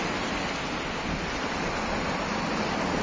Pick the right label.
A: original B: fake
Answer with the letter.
A